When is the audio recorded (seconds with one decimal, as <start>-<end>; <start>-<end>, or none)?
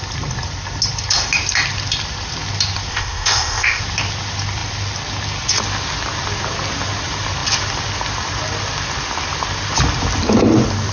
0.0-2.9; 3.8-10.9